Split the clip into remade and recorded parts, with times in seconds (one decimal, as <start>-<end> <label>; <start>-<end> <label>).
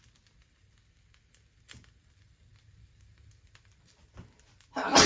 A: 0.0-5.1 recorded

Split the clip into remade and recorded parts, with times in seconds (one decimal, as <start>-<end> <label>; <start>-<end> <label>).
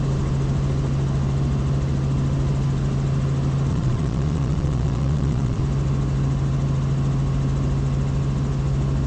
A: 0.0-3.7 recorded; 3.7-5.6 remade; 5.6-9.1 recorded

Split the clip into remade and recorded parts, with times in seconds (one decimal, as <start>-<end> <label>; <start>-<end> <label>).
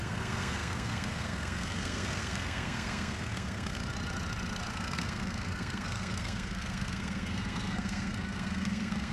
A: 0.0-3.8 remade; 3.8-4.7 recorded; 4.7-9.1 remade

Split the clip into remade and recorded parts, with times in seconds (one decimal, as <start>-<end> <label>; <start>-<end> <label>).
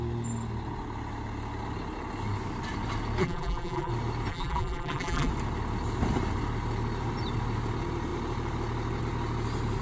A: 0.0-3.2 recorded; 3.2-3.9 remade; 3.9-4.3 recorded; 4.3-5.3 remade; 5.3-9.8 recorded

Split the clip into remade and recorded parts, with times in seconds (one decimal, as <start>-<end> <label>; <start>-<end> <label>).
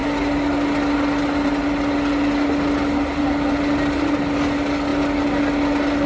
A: 0.0-6.1 recorded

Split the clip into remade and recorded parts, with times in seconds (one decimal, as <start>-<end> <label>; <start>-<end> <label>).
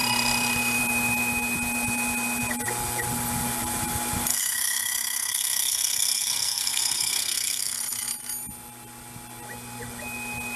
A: 0.0-4.3 recorded; 4.3-7.8 remade; 7.8-10.6 recorded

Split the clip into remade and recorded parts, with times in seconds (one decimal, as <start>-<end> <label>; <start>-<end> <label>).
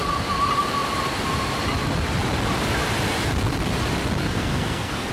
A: 0.0-4.2 recorded; 4.2-5.1 remade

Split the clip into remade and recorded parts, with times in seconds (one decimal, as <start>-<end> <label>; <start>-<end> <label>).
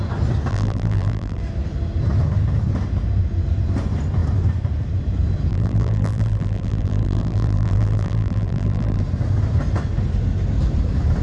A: 0.0-0.5 recorded; 0.5-1.4 remade; 1.4-5.5 recorded; 5.5-9.0 remade; 9.0-11.2 recorded